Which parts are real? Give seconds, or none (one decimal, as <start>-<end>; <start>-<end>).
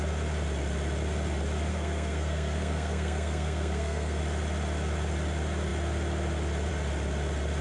0.0-1.7; 4.2-7.6